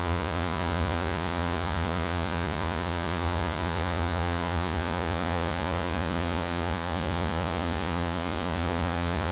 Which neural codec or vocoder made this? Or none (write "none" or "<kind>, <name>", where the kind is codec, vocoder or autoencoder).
vocoder, Vocos